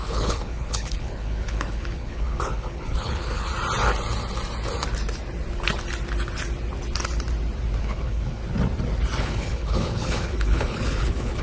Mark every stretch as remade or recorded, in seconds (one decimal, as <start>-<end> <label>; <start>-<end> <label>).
0.0-3.5 remade; 3.5-7.8 recorded; 7.8-8.4 remade; 8.4-9.2 recorded; 9.2-11.4 remade

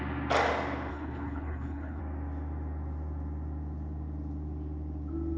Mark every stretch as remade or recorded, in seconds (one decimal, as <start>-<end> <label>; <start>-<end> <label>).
0.0-0.9 recorded; 0.9-2.0 remade; 2.0-5.4 recorded

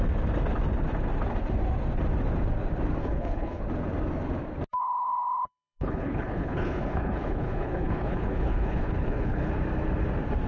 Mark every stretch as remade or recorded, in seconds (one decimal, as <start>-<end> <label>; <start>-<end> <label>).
0.0-3.0 recorded; 3.0-3.6 remade; 3.6-4.8 recorded; 4.8-9.5 remade; 9.5-10.5 recorded

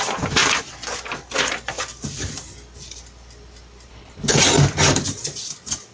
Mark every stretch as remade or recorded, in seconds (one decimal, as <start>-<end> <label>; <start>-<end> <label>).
0.0-3.9 recorded; 3.9-4.4 remade; 4.4-5.9 recorded

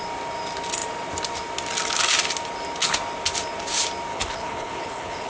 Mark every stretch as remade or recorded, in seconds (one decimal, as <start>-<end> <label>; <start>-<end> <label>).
0.0-4.1 recorded; 4.1-5.3 remade